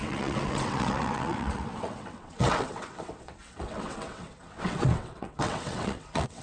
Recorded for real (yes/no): no